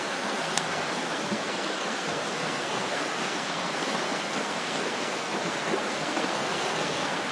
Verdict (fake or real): fake